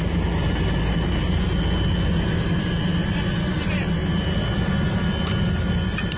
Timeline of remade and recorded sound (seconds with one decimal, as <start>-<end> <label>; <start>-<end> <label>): 0.0-6.2 recorded